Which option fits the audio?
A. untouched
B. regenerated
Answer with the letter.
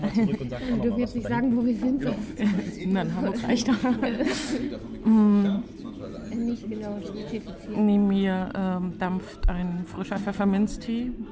A